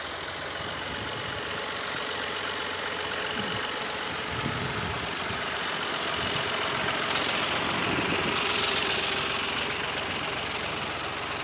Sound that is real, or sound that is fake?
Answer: real